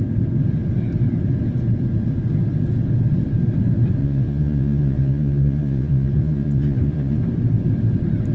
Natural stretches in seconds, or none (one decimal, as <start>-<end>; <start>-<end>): 0.0-4.0; 7.2-8.3